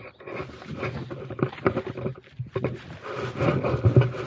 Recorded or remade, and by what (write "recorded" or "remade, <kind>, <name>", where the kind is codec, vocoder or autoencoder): recorded